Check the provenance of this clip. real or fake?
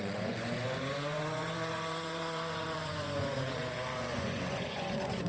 fake